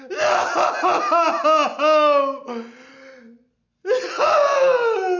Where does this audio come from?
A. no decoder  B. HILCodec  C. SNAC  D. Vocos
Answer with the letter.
A